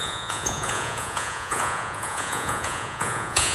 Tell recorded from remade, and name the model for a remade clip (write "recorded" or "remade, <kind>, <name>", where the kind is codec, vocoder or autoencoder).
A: remade, vocoder, Vocos